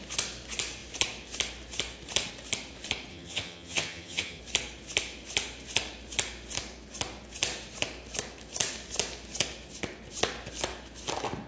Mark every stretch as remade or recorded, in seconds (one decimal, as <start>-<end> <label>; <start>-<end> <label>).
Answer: 0.0-3.1 recorded; 3.1-4.4 remade; 4.4-11.5 recorded